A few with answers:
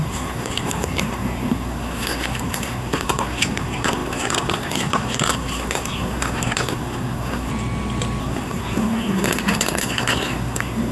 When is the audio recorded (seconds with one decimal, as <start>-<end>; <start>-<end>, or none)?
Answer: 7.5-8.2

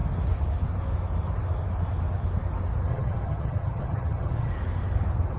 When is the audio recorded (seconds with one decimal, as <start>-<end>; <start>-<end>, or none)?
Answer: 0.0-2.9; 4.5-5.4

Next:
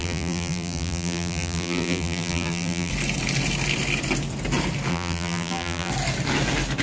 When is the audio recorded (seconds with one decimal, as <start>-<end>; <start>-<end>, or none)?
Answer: 2.9-4.9; 5.9-6.8